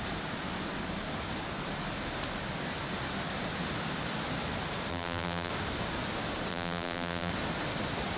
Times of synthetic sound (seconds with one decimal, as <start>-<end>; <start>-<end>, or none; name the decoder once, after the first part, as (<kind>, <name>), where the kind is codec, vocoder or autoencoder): 4.9-5.5 (vocoder, BigVGAN v2); 6.5-7.3